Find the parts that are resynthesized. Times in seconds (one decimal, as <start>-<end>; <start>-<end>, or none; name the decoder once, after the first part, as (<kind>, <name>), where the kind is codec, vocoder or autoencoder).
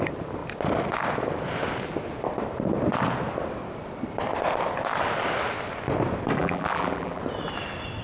6.4-7.2 (vocoder, BigVGAN v2)